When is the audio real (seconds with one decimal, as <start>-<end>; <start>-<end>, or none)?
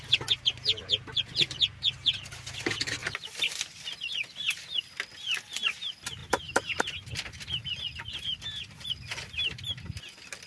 0.0-10.5